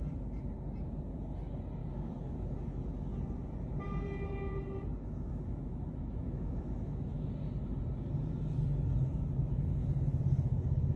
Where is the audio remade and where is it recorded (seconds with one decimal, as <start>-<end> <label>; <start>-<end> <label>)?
0.0-1.8 recorded; 1.8-2.3 remade; 2.3-5.0 recorded; 5.0-7.3 remade; 7.3-11.0 recorded